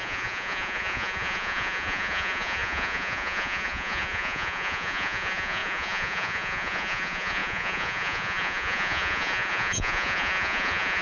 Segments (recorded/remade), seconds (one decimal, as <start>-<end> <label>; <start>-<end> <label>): 0.0-11.0 remade